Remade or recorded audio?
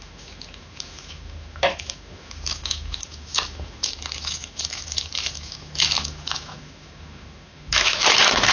remade